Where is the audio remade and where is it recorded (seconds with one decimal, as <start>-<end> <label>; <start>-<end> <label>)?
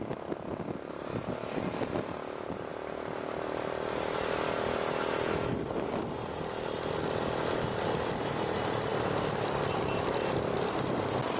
0.0-11.4 recorded